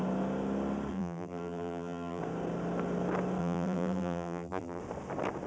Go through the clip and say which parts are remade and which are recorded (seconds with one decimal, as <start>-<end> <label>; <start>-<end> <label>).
0.0-0.9 recorded; 0.9-2.2 remade; 2.2-3.4 recorded; 3.4-4.8 remade; 4.8-5.5 recorded